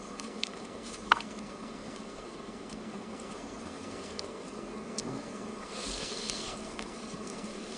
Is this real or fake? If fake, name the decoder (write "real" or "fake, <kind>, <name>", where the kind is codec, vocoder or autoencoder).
fake, codec, SNAC